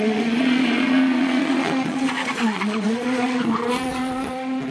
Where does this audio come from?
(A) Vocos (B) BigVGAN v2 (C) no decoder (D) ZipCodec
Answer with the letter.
A